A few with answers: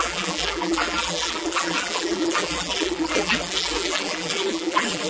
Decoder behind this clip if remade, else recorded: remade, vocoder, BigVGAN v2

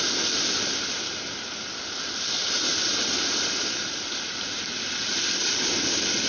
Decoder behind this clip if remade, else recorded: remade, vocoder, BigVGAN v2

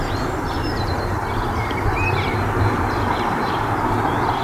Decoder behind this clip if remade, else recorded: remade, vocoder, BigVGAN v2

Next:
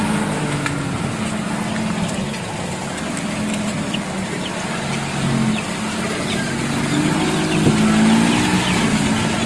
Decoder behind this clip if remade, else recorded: recorded